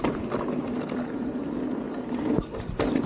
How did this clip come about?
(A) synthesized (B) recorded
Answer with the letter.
B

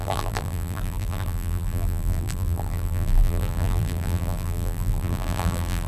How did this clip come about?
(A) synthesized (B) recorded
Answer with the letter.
A